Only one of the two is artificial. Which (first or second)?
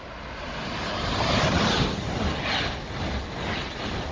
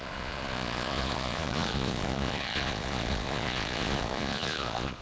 second